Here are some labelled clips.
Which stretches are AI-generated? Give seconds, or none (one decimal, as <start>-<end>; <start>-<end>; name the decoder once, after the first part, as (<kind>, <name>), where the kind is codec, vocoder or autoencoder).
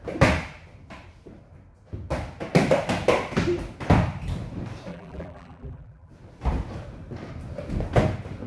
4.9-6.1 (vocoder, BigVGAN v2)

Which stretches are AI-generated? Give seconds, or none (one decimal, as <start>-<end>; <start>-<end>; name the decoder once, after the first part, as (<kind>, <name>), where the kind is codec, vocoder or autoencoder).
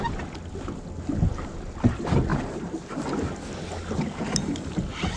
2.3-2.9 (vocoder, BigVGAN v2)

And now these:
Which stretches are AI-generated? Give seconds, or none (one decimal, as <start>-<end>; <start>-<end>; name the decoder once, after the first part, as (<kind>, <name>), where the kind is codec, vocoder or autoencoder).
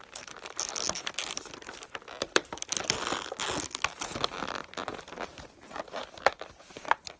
0.0-3.3 (vocoder, BigVGAN v2)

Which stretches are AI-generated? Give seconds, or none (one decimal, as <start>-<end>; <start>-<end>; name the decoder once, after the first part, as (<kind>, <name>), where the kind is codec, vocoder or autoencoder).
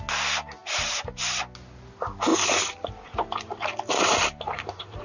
0.6-1.4 (vocoder, BigVGAN v2); 2.3-5.0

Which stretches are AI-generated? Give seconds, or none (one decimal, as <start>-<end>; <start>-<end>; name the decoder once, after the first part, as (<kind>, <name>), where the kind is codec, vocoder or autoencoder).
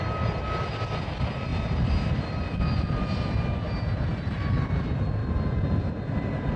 0.0-5.2 (vocoder, BigVGAN v2); 5.8-6.6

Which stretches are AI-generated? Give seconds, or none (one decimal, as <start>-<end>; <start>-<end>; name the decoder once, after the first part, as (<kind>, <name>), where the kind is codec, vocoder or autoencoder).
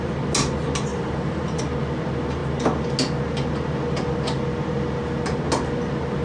0.9-1.6 (vocoder, BigVGAN v2)